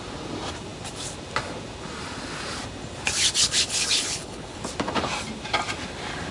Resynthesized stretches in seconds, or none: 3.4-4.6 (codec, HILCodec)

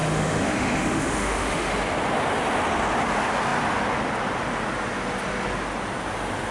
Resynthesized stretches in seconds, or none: 0.0-1.7 (autoencoder, DAC-VAE)

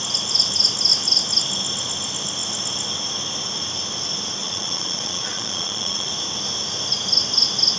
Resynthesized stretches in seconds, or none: 4.4-6.1 (vocoder, Vocos)

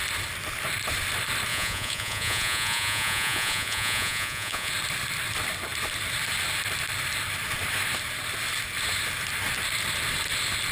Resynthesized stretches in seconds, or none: 1.5-4.7 (vocoder, Vocos)

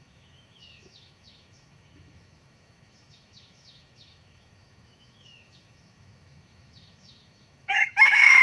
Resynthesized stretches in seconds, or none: 0.0-8.4 (autoencoder, DAC-VAE)

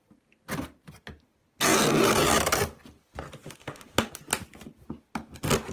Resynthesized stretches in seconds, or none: 3.6-4.1 (autoencoder, DAC-VAE)